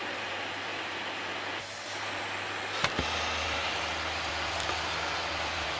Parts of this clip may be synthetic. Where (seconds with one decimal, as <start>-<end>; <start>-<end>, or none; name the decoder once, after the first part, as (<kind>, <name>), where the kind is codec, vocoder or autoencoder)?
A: none